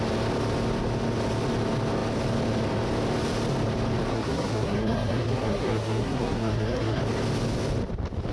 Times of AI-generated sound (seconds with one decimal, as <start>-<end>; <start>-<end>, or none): 4.1-7.0